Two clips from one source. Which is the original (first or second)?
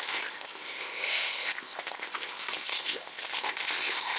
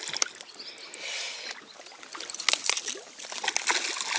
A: second